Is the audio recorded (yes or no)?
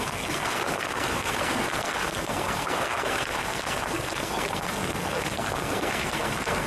no